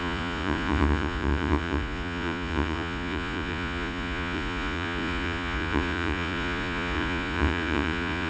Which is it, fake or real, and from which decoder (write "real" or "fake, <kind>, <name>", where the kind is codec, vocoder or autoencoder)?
fake, vocoder, Vocos